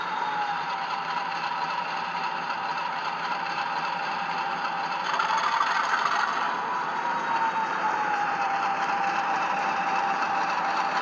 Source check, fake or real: fake